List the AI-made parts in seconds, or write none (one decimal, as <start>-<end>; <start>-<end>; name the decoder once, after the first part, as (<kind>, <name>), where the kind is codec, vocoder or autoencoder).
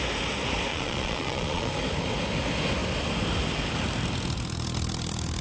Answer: 0.7-1.7 (vocoder, Vocos)